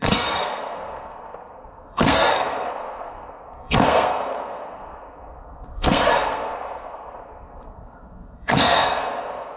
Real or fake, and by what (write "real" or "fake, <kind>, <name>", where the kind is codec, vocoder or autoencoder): fake, codec, SNAC